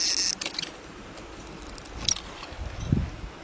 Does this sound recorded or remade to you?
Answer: recorded